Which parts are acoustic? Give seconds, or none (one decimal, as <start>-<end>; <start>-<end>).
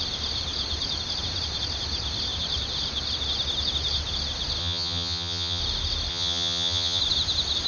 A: 0.0-4.6; 5.6-6.1; 7.0-7.7